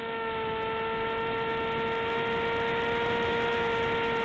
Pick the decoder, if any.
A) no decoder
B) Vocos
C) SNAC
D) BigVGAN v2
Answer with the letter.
A